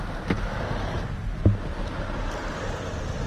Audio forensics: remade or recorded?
recorded